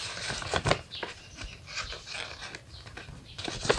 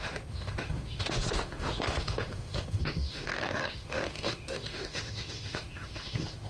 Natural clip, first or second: first